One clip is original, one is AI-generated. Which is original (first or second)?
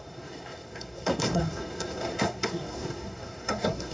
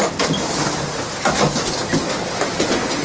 second